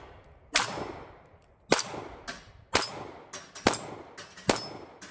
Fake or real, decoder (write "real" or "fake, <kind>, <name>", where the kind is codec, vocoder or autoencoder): real